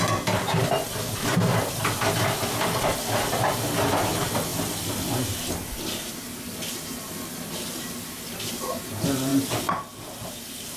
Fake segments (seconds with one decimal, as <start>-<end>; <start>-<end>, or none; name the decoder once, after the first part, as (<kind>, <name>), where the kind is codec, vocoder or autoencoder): none